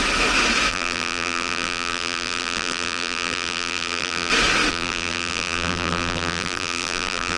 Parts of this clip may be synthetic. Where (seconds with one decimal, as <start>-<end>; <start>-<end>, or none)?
0.7-4.3; 4.7-7.4